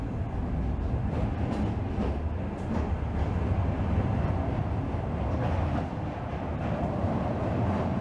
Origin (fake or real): real